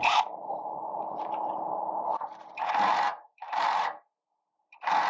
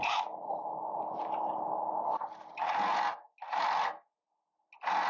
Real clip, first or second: second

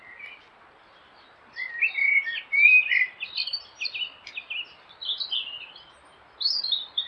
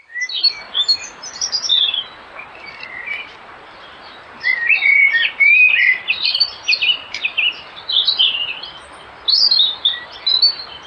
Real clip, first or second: first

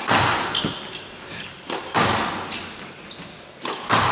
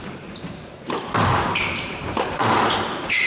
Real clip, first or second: first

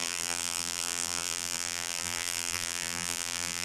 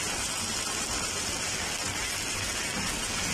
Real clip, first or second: second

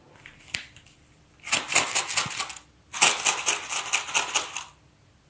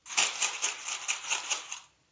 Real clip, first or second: first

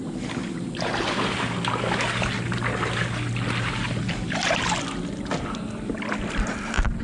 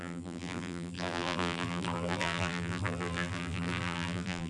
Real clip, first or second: first